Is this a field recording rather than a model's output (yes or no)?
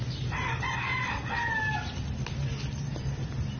yes